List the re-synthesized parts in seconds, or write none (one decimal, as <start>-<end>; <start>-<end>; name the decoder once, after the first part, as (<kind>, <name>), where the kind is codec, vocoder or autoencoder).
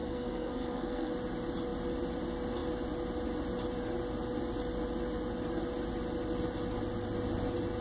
0.0-1.1 (codec, SNAC)